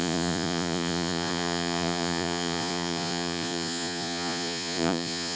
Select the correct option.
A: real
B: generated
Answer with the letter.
B